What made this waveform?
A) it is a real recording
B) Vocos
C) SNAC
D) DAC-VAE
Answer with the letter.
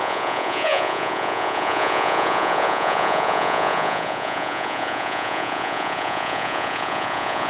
B